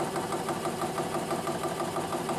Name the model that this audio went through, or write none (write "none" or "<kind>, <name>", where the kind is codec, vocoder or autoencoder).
none